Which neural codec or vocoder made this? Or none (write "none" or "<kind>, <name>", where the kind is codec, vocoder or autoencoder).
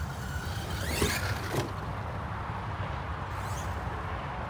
none